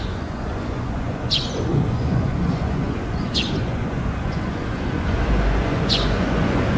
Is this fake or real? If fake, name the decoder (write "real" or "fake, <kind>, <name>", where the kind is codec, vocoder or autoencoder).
fake, vocoder, Vocos